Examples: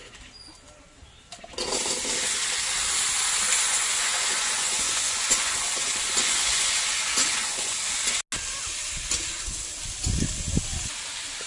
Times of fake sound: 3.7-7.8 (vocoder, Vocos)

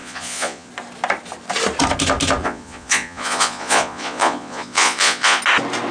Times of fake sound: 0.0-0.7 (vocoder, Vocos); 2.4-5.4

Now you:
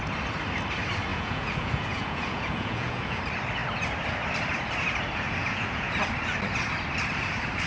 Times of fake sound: 1.1-3.2 (vocoder, Vocos); 5.4-5.9

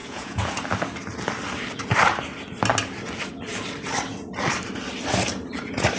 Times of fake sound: 0.0-0.5 (vocoder, Vocos)

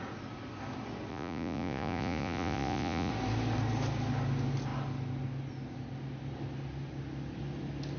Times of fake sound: 1.1-3.1 (vocoder, Vocos)

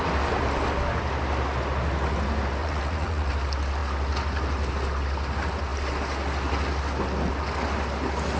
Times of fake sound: 2.6-3.3 (vocoder, Vocos)